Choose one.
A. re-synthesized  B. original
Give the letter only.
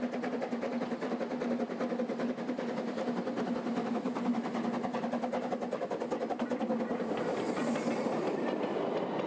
B